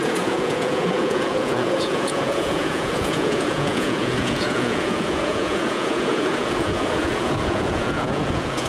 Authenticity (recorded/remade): remade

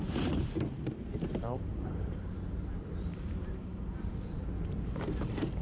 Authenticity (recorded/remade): remade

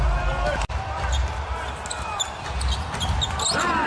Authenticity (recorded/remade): recorded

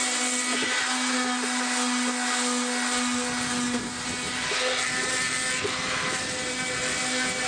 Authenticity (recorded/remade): recorded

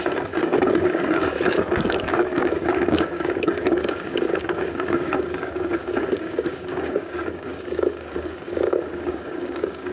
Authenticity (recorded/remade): remade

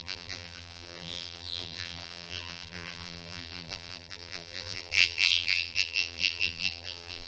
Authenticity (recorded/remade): remade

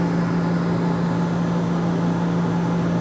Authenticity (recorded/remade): recorded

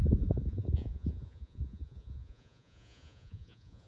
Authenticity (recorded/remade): remade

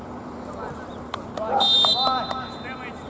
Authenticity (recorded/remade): recorded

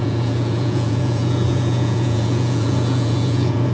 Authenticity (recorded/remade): remade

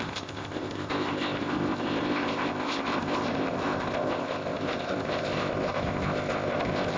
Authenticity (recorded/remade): remade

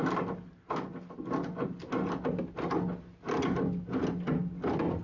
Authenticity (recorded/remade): recorded